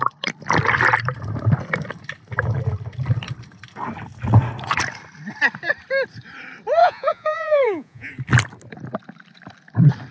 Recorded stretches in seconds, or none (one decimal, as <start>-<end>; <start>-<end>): 0.0-6.8; 8.1-10.1